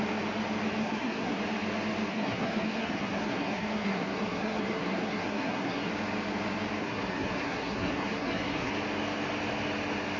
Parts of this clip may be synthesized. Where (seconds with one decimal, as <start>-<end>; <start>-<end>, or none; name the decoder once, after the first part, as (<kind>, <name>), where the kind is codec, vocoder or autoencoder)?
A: 0.8-1.4 (codec, SNAC); 2.1-5.9; 6.8-8.7